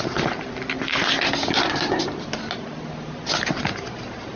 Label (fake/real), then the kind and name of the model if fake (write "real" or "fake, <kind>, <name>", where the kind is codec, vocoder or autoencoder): real